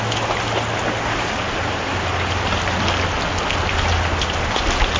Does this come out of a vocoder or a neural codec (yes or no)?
no